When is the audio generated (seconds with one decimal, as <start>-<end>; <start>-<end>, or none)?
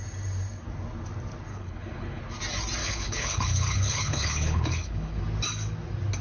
1.5-2.2; 2.8-5.2